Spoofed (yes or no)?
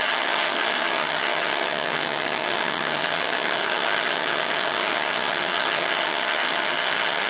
yes